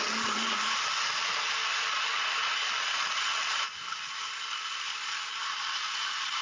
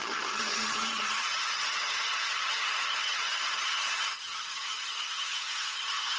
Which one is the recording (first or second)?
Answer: first